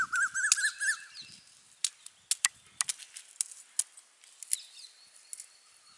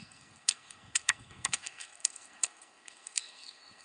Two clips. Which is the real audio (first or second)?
first